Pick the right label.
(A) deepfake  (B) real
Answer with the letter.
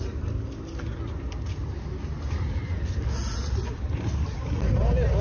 B